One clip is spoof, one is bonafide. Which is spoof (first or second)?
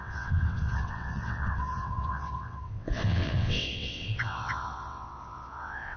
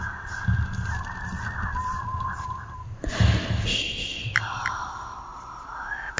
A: first